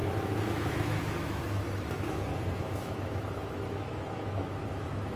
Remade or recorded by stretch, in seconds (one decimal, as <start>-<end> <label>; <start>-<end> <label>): 0.0-5.2 remade